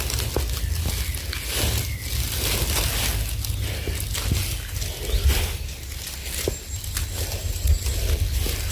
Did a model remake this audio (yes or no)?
no